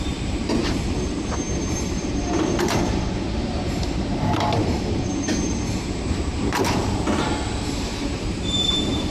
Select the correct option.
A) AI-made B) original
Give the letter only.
A